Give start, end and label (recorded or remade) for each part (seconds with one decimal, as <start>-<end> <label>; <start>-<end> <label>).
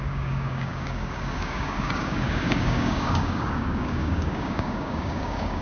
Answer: 0.0-5.6 remade